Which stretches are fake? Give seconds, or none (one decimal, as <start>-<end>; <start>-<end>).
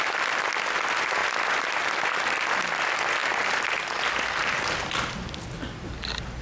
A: none